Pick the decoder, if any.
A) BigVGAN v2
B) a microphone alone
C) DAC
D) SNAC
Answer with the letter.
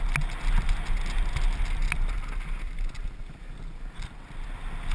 B